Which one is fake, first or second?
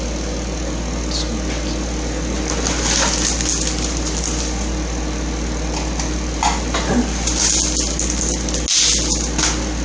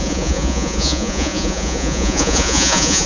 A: second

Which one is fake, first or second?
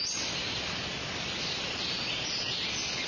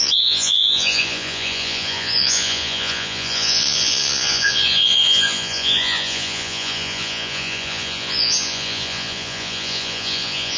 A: second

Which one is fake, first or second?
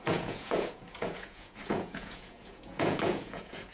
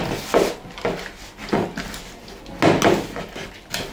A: first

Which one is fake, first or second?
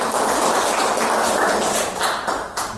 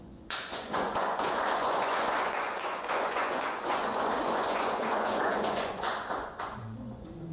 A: second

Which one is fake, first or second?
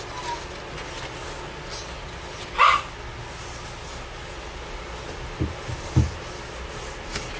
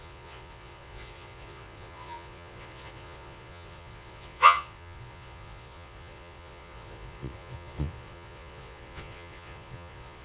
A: second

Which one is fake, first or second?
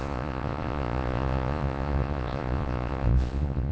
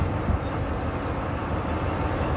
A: first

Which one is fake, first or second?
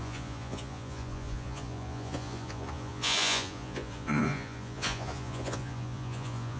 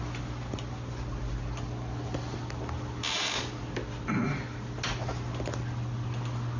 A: first